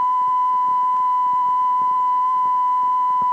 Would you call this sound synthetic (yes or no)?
yes